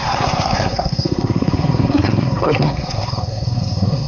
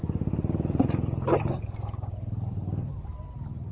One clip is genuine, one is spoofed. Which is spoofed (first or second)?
first